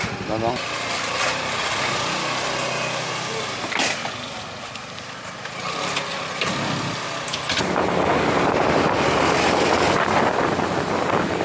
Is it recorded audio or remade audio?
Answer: recorded